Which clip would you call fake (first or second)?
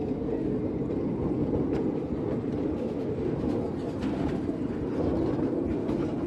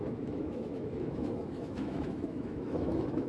second